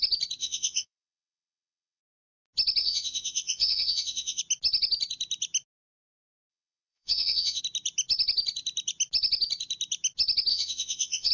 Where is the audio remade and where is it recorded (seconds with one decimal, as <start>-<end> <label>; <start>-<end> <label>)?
0.0-0.4 recorded; 0.4-2.0 remade; 2.0-2.8 recorded; 2.8-4.4 remade; 4.4-6.5 recorded; 6.5-7.6 remade; 7.6-10.5 recorded; 10.5-11.3 remade